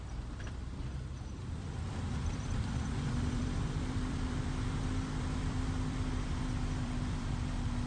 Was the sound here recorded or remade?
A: remade